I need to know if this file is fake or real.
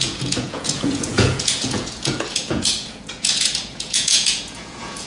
fake